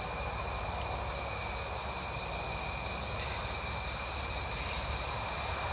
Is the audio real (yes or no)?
yes